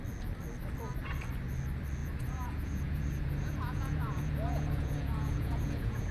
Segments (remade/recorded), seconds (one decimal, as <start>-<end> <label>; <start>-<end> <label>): 0.0-2.0 recorded; 2.0-6.1 remade

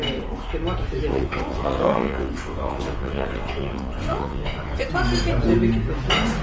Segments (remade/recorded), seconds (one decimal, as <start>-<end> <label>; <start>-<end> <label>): 0.0-1.1 recorded; 1.1-4.9 remade; 4.9-6.4 recorded